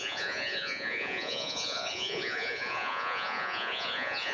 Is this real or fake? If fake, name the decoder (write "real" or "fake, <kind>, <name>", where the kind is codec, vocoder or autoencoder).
fake, vocoder, Vocos